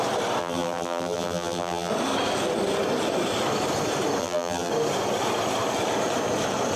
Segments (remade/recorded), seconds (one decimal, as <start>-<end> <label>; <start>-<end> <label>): 0.0-0.4 recorded; 0.4-1.9 remade; 1.9-4.2 recorded; 4.2-4.7 remade; 4.7-6.8 recorded